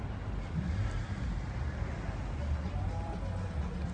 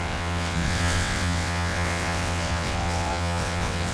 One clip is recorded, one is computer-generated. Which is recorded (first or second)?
first